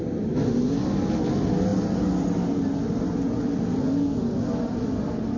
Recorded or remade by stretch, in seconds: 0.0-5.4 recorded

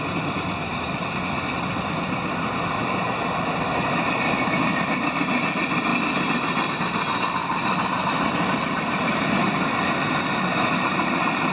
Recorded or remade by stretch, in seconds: 0.0-5.9 recorded; 5.9-6.7 remade; 6.7-7.4 recorded; 7.4-9.3 remade; 9.3-11.5 recorded

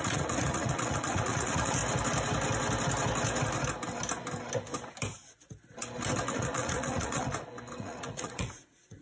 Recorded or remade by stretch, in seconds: 0.0-1.8 remade; 1.8-6.3 recorded; 6.3-7.3 remade; 7.3-7.8 recorded; 7.8-9.0 remade

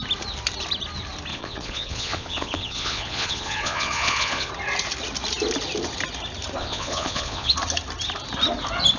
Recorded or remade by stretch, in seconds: 0.0-1.3 recorded; 1.3-4.5 remade; 4.5-6.6 recorded; 6.6-7.5 remade; 7.5-9.0 recorded

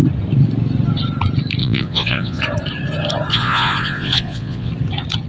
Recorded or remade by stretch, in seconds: 0.0-1.6 recorded; 1.6-2.4 remade; 2.4-3.3 recorded; 3.3-4.7 remade; 4.7-5.3 recorded